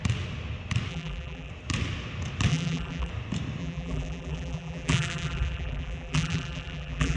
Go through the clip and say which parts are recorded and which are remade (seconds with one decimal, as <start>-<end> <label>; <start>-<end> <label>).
0.0-0.9 recorded; 0.9-1.5 remade; 1.5-2.5 recorded; 2.5-3.1 remade; 3.1-3.6 recorded; 3.6-7.2 remade